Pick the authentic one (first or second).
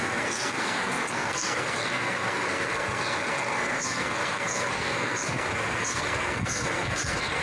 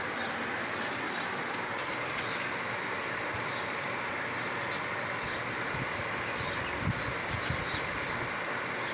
second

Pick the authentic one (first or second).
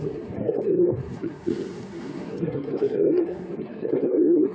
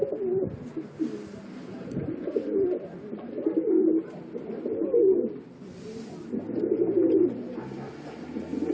second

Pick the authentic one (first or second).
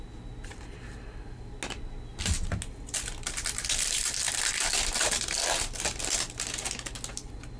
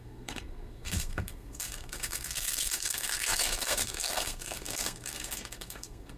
first